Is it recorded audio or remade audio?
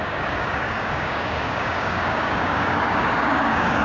remade